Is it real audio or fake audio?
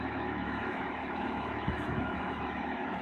fake